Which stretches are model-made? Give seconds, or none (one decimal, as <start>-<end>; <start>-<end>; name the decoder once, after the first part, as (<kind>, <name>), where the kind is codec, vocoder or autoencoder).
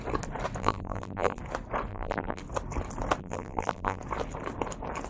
0.6-1.4 (vocoder, BigVGAN v2); 1.9-2.4; 3.2-4.0